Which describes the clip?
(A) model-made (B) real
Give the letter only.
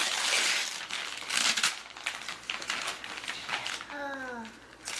B